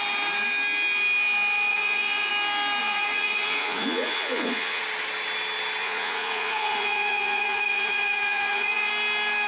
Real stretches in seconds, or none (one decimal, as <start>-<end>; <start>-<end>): 0.0-1.7; 2.3-2.8; 4.8-5.8; 8.9-9.5